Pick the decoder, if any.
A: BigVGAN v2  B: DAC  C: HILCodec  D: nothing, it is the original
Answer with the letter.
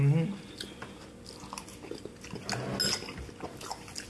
D